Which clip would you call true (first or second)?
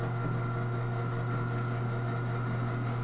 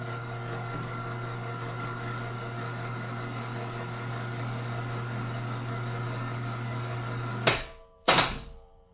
first